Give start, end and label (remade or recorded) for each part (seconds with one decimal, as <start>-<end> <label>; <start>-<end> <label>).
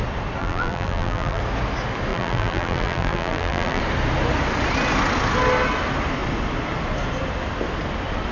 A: 0.0-0.4 recorded; 0.4-1.4 remade; 1.4-2.1 recorded; 2.1-3.8 remade; 3.8-8.3 recorded